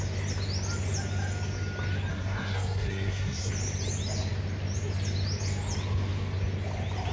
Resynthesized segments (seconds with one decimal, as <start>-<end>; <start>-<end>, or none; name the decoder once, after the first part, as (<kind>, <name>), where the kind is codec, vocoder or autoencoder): 2.1-3.5 (codec, SNAC)